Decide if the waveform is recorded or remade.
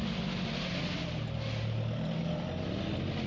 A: recorded